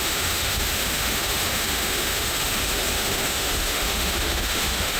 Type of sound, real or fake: fake